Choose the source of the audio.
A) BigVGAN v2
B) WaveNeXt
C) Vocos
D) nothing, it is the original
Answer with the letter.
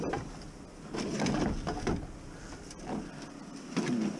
D